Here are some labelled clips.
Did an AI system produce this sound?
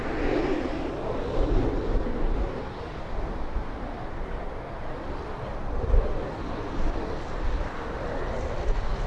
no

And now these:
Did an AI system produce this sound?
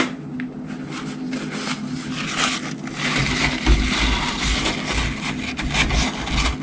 no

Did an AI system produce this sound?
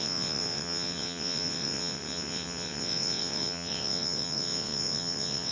yes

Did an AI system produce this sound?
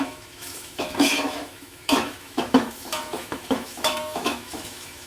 yes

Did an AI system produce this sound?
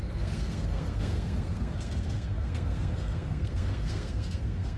yes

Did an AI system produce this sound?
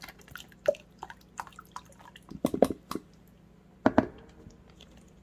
no